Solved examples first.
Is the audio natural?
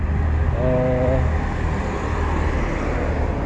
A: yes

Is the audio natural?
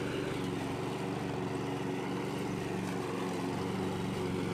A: yes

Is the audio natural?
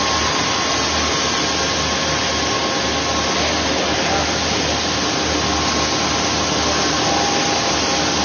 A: yes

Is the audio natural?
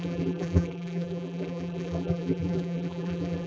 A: no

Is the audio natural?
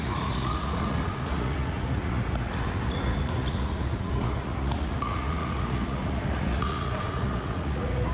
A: no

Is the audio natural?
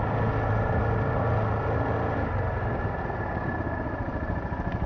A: yes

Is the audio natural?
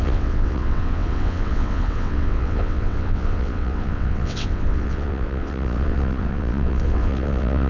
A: no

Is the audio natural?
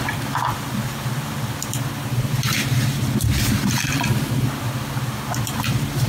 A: no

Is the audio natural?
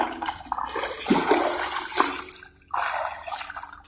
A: yes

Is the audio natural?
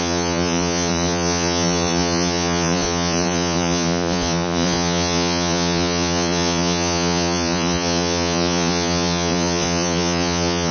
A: no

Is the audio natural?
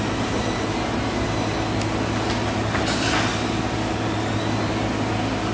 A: yes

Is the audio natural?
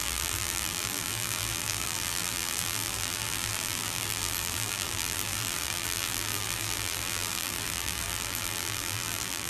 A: no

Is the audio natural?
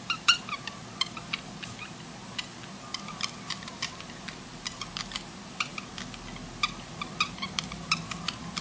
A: yes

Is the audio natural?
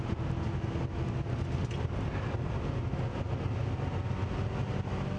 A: yes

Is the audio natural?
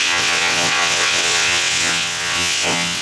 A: no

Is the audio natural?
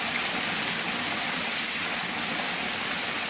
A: yes